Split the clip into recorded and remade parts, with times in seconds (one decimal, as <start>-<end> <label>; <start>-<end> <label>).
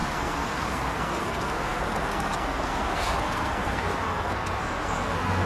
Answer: 0.0-5.5 remade